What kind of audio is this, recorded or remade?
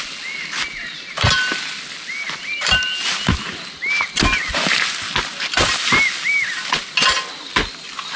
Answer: recorded